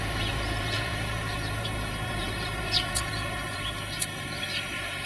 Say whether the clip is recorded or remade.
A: remade